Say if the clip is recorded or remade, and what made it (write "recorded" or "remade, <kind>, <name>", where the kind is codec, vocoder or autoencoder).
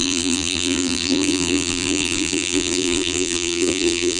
remade, vocoder, BigVGAN v2